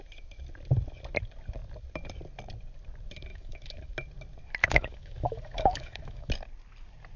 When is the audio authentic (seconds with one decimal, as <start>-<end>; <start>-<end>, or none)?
0.0-3.3; 3.9-4.6; 6.3-7.2